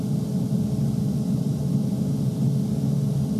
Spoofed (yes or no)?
no